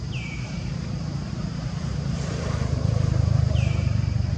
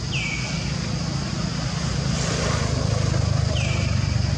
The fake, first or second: first